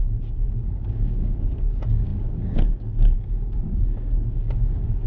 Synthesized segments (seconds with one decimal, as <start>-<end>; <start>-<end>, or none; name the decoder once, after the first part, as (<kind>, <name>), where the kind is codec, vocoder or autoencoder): 0.0-5.1 (codec, DAC)